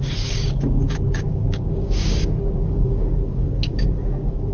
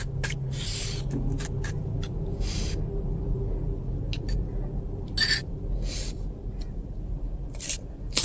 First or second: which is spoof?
first